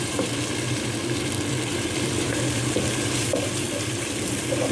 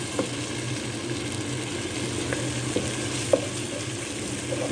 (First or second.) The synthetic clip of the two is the first